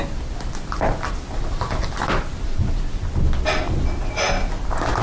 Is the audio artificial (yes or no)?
no